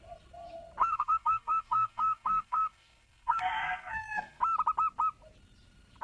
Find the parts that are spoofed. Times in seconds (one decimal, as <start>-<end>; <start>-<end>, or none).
0.8-4.4

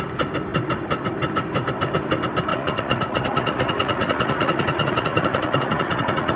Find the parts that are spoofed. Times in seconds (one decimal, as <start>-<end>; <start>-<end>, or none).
2.5-6.4

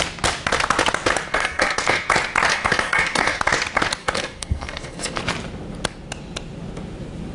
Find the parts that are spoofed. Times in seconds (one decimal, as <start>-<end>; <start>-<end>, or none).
1.3-2.1; 2.5-3.4; 4.0-5.2

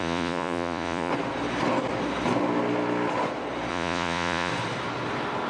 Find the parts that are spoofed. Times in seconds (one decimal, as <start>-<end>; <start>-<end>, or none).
0.0-1.1; 3.7-4.5

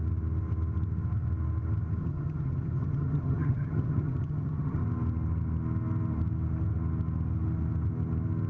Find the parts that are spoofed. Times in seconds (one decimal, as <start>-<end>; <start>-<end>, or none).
2.0-4.8

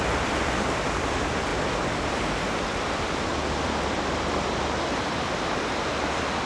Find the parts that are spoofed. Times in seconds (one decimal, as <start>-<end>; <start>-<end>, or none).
0.0-1.5; 2.1-3.3

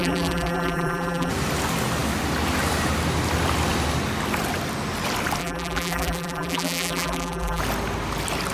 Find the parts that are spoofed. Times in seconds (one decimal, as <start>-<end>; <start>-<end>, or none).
0.0-1.3; 5.4-7.6